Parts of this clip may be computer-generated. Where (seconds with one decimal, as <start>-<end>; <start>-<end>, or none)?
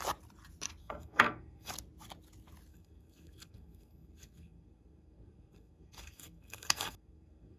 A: 0.8-1.7; 2.7-7.6